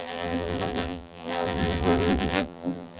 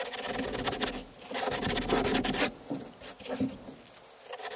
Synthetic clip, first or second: first